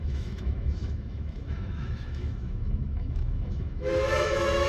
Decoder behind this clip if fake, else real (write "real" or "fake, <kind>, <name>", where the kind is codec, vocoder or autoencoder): fake, autoencoder, DAC-VAE